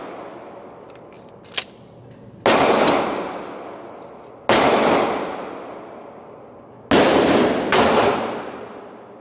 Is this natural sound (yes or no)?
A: yes